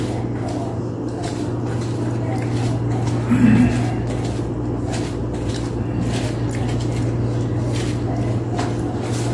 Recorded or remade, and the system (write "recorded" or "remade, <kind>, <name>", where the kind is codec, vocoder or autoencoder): recorded